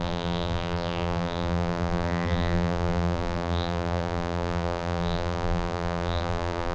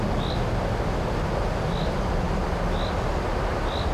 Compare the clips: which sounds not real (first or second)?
first